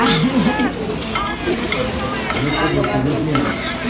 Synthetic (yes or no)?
no